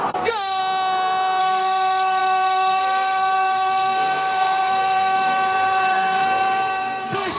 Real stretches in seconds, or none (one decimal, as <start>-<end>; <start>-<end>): 0.6-1.4